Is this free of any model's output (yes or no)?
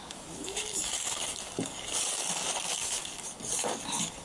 no